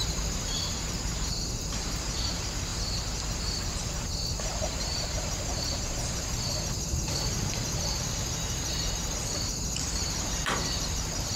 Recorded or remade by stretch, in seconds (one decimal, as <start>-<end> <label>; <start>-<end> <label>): 0.0-2.7 remade; 2.7-3.7 recorded; 3.7-11.4 remade